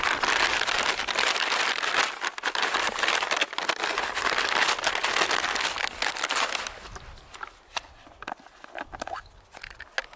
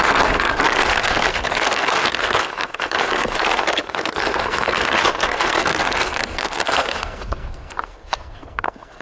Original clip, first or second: first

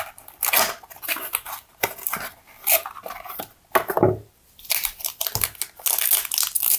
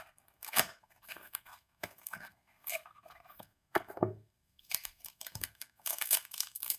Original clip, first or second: first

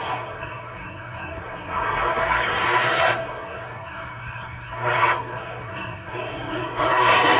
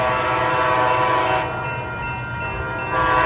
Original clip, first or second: second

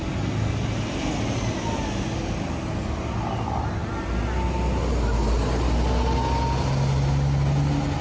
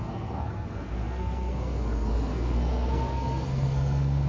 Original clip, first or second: first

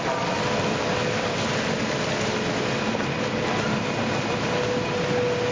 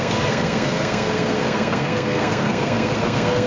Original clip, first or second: first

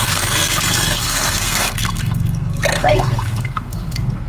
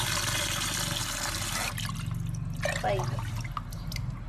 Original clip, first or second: second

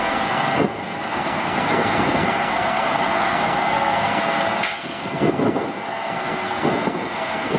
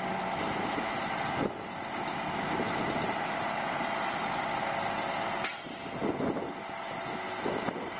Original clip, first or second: second